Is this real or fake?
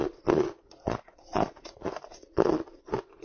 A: fake